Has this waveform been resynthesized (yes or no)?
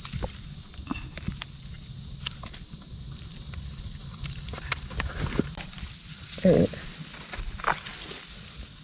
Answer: no